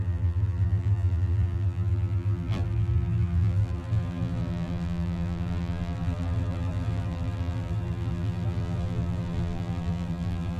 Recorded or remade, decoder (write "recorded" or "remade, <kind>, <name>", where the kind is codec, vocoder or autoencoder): remade, vocoder, BigVGAN v2